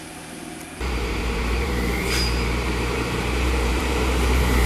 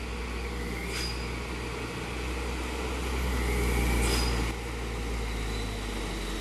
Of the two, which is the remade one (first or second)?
first